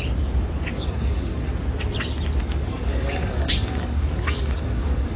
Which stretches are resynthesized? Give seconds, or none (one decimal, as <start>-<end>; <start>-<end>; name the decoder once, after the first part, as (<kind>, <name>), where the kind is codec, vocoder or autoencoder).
0.7-1.5 (codec, DAC); 2.4-5.2